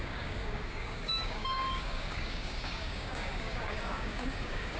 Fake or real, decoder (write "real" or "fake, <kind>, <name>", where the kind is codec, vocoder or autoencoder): fake, codec, DAC